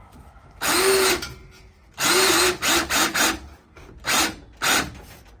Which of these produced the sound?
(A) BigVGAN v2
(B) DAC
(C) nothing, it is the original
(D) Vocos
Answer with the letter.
C